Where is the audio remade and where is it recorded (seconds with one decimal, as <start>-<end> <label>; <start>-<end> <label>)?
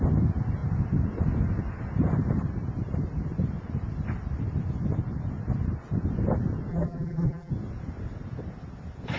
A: 0.0-6.7 recorded; 6.7-7.5 remade; 7.5-9.2 recorded